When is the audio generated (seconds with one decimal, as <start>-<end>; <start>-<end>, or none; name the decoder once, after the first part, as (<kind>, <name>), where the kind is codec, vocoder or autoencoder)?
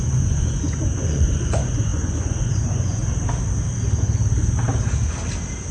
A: 0.0-3.0 (vocoder, Vocos)